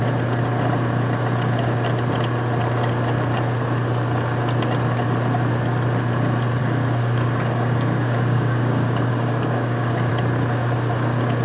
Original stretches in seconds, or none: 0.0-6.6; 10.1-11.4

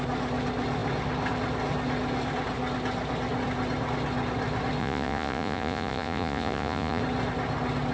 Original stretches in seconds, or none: 0.0-4.8; 7.0-7.9

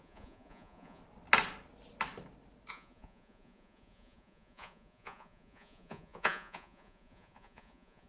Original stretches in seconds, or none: 1.0-2.7

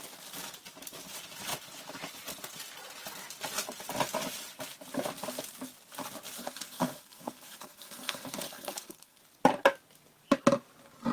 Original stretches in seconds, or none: 0.0-6.4; 9.2-11.1

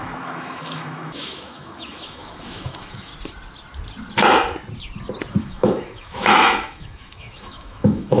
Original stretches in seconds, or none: 3.1-5.4

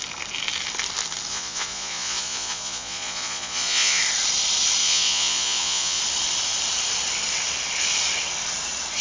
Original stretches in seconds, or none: 0.0-1.3; 4.0-4.8; 6.0-9.0

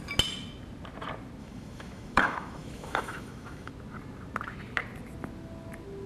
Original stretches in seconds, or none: 0.0-1.4; 3.7-6.1

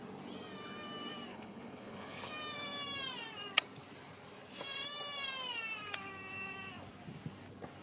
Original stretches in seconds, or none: 0.0-1.3; 2.3-7.8